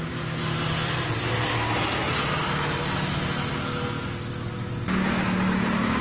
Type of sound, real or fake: real